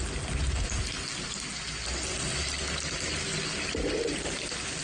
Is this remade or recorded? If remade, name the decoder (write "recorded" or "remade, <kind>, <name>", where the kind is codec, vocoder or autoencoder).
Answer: recorded